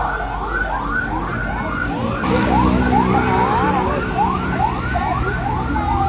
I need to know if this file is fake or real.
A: real